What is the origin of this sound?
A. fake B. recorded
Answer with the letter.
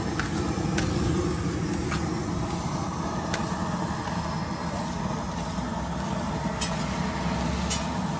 B